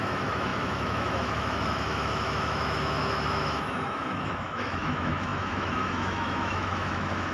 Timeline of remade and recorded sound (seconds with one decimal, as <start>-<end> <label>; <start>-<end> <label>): 0.0-7.3 remade